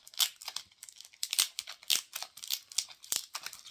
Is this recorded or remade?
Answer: recorded